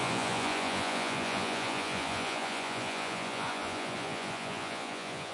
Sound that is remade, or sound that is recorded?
remade